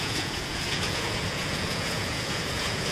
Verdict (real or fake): fake